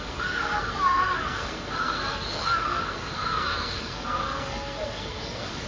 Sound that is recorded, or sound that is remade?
remade